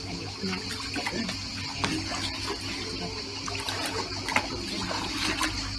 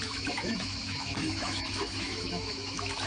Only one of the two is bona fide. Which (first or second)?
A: first